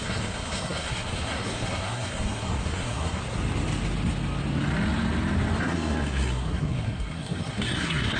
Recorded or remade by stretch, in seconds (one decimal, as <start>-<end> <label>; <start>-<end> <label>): 0.0-3.2 remade; 3.2-5.6 recorded; 5.6-8.2 remade